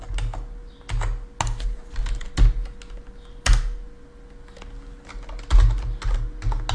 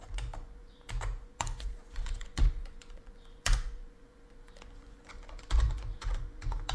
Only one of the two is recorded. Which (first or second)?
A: first